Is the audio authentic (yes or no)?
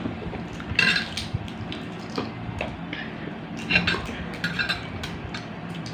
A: yes